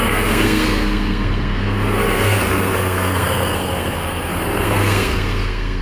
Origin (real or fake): fake